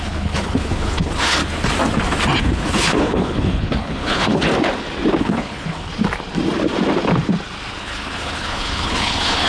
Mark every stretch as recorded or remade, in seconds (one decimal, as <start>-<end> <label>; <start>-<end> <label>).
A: 0.0-1.4 remade; 1.4-2.4 recorded; 2.4-4.5 remade; 4.5-5.2 recorded; 5.2-5.9 remade; 5.9-7.8 recorded; 7.8-9.5 remade